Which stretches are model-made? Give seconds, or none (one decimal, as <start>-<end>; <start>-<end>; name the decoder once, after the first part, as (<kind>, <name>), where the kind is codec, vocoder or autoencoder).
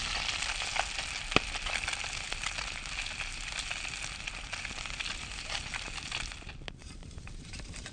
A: 5.1-5.7 (vocoder, BigVGAN v2); 6.8-7.9